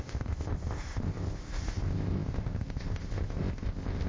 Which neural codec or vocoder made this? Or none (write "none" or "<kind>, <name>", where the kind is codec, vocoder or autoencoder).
codec, ZipCodec